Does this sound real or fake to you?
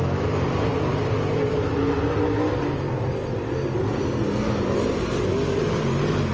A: real